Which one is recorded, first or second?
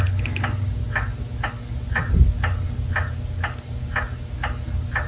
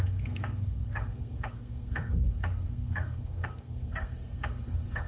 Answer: first